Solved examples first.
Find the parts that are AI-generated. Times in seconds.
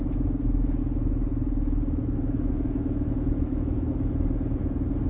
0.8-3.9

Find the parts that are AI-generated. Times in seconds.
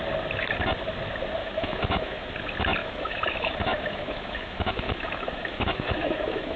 1.4-2.3; 2.8-6.6